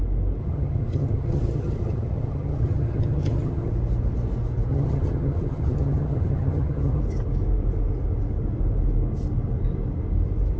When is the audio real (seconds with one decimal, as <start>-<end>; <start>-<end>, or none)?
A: 0.0-0.4; 3.7-4.7; 7.0-10.6